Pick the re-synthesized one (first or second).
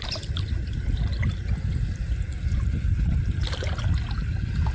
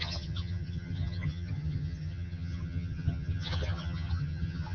second